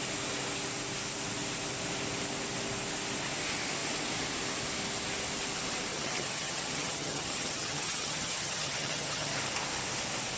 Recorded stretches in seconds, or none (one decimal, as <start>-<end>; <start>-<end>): 0.0-5.9; 9.4-10.4